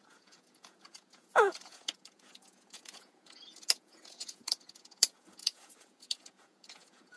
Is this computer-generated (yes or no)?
yes